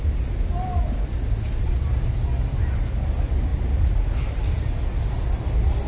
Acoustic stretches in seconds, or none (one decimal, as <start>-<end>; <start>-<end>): 0.0-5.9